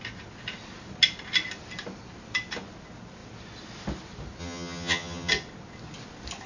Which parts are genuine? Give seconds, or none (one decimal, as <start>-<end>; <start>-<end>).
0.0-4.4; 5.3-6.5